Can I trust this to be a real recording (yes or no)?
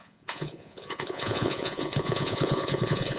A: no